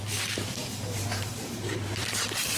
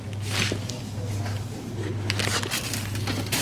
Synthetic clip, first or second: first